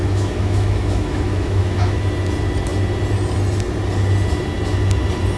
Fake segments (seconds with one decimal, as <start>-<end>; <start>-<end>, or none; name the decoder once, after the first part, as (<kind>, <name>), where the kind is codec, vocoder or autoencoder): 0.0-2.0 (autoencoder, DAC-VAE)